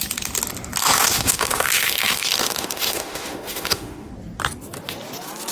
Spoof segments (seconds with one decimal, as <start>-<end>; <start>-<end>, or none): 0.8-4.1